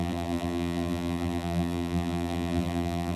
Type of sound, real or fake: fake